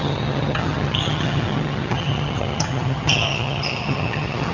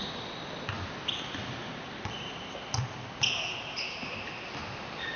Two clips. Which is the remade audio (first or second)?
first